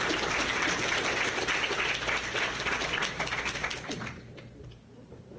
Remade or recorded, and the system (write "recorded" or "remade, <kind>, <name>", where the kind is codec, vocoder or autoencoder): recorded